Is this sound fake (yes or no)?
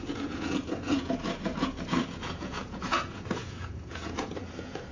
yes